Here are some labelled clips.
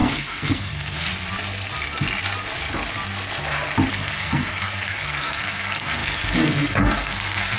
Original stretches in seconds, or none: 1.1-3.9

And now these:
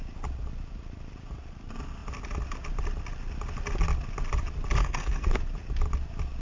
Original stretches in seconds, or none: 0.0-4.8; 5.4-6.4

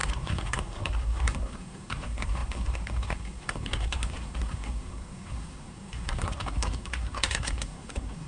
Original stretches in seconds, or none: none